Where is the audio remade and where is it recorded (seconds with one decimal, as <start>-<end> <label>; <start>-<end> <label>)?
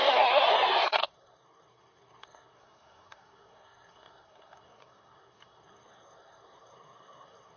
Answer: 0.0-7.6 remade